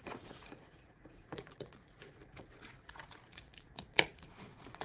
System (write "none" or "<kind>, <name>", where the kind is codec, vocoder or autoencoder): vocoder, Vocos